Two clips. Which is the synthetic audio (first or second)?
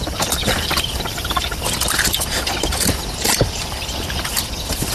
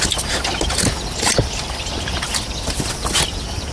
first